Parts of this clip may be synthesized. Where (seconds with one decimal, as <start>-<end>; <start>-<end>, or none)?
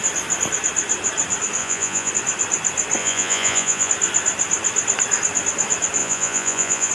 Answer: 1.6-2.1; 3.0-3.9; 6.0-6.9